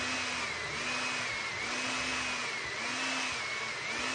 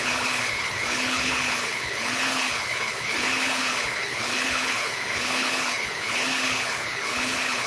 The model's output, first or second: second